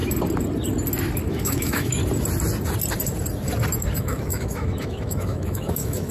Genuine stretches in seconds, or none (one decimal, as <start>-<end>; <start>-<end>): 0.0-1.3; 2.0-4.0